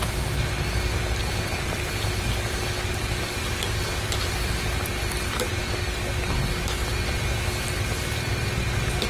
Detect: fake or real real